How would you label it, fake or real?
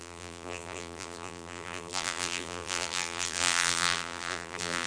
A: fake